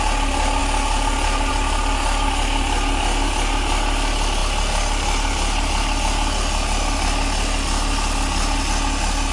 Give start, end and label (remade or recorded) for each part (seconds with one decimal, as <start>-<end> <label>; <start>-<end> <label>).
0.0-9.3 recorded